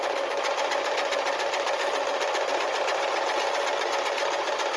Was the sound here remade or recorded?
recorded